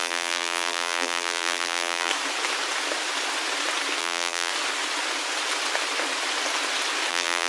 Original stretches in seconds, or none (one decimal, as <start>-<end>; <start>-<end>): 2.1-4.0; 4.5-7.1